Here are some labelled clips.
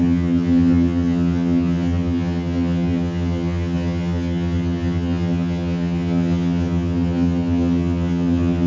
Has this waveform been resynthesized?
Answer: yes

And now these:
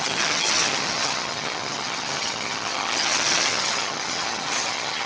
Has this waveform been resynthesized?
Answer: yes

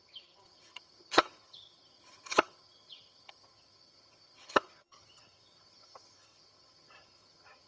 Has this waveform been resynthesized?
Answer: yes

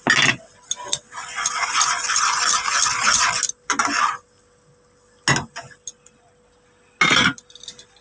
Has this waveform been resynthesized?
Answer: no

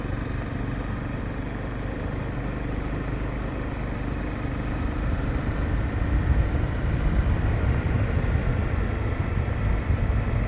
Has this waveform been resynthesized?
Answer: no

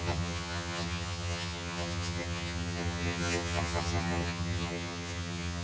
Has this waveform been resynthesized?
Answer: yes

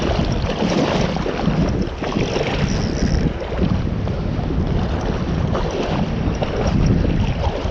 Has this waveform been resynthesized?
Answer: no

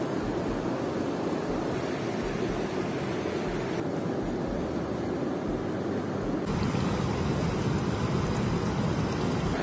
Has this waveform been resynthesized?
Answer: no